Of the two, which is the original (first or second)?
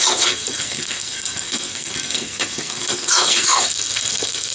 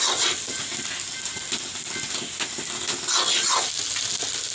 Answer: second